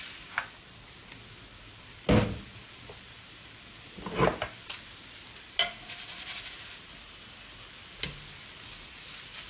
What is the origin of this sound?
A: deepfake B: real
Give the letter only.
B